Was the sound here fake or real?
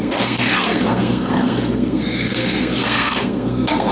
fake